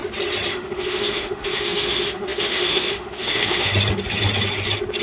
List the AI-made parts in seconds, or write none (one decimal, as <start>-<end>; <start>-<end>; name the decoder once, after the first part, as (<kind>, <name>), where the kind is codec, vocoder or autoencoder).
0.5-3.7 (autoencoder, DAC-VAE)